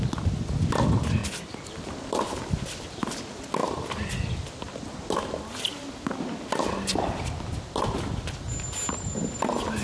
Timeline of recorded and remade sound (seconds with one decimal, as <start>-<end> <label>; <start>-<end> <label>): 0.0-9.8 recorded